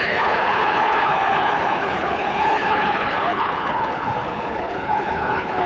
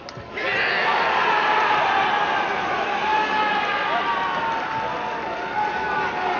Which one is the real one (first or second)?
second